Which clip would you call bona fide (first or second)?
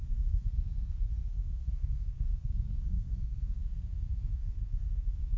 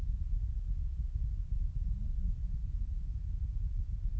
second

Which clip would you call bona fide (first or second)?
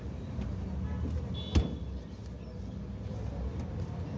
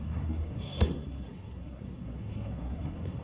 first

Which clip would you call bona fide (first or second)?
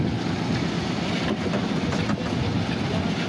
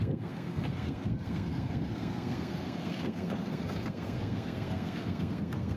first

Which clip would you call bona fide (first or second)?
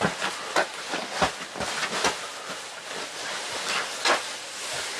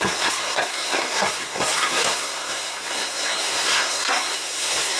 first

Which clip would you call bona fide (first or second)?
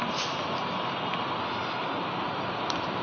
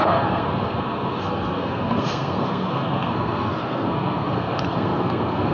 first